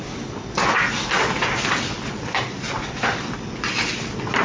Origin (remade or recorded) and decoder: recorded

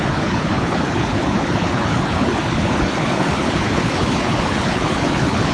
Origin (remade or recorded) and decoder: remade, codec, HILCodec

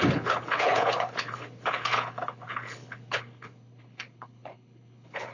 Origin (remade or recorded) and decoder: remade, codec, HILCodec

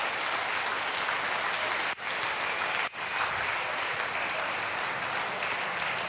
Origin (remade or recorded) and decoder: recorded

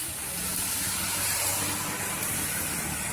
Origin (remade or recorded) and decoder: recorded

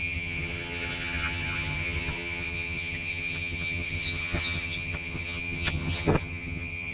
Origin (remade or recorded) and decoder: remade, vocoder, HiFi-GAN